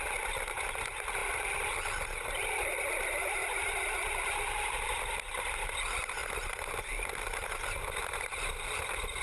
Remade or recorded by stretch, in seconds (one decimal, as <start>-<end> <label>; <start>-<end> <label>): 0.0-9.2 recorded